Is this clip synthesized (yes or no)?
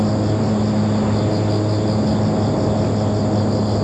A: no